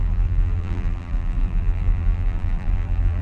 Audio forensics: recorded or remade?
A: remade